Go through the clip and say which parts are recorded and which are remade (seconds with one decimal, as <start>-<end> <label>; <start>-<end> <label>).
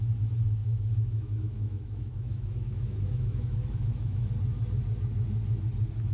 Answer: 0.0-0.6 recorded; 0.6-4.3 remade; 4.3-6.1 recorded